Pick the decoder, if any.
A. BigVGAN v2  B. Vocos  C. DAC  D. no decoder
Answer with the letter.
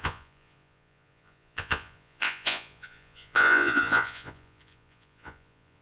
B